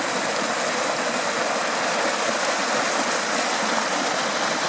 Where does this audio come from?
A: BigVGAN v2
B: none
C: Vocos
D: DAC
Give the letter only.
B